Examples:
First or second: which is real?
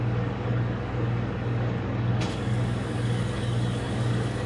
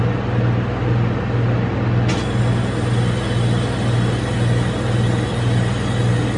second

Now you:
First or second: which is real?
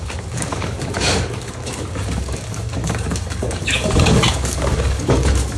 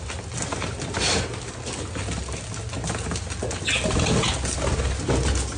second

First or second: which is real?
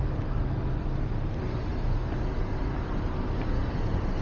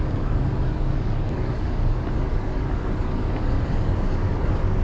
first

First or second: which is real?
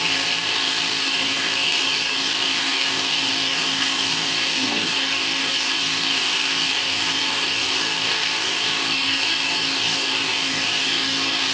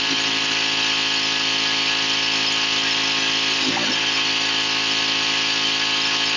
second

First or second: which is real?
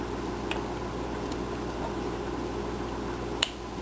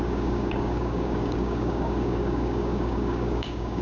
first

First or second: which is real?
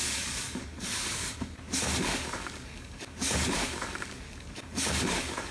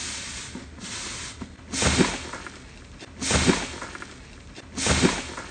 second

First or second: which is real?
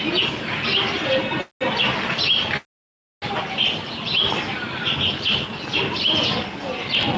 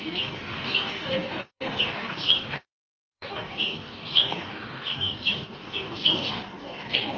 first